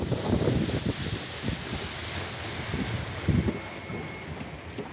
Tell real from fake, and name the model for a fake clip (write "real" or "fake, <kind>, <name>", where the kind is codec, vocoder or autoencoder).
real